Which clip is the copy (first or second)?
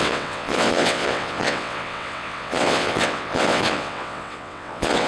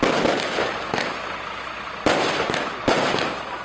first